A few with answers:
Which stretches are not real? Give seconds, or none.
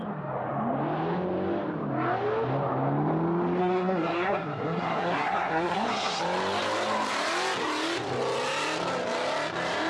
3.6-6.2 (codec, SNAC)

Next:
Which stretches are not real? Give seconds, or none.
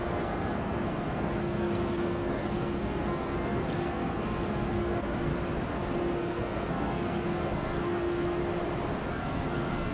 0.0-5.3 (codec, SNAC); 6.0-8.4; 9.1-9.9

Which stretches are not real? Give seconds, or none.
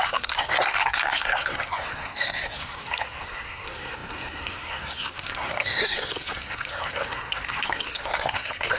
0.0-8.8 (codec, SNAC)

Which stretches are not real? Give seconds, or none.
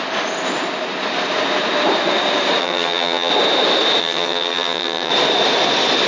2.6-3.3 (vocoder, HiFi-GAN); 4.0-5.1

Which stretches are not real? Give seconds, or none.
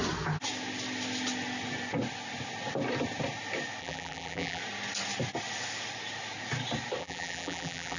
3.8-4.6 (vocoder, BigVGAN v2); 7.0-8.0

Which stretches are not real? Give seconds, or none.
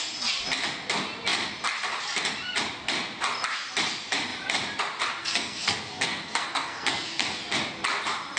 5.2-7.4 (codec, SNAC)